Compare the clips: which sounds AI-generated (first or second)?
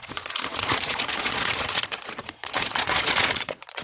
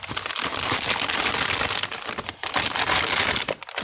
first